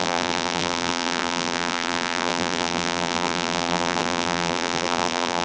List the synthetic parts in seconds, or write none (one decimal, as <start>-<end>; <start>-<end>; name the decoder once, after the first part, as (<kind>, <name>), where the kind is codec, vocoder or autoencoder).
0.0-5.4 (vocoder, BigVGAN v2)